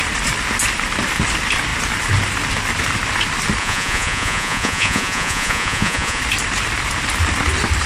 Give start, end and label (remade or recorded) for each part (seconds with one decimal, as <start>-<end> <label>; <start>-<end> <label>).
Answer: 0.0-3.6 recorded; 3.6-6.2 remade; 6.2-7.9 recorded